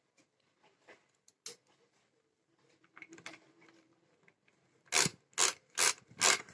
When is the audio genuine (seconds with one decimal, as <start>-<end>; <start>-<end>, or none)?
0.0-6.5